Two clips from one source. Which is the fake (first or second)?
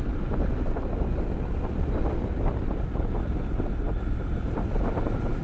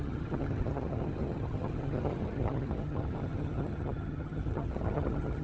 second